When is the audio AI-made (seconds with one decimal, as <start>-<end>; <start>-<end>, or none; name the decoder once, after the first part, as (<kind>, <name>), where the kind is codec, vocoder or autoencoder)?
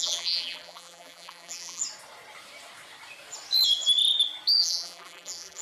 0.0-1.8 (vocoder, BigVGAN v2); 4.6-5.6